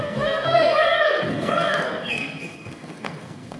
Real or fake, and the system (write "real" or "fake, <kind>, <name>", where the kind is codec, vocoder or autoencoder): fake, codec, SNAC